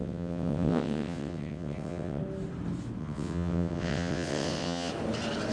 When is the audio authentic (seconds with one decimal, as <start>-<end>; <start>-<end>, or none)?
2.2-3.0; 4.9-5.5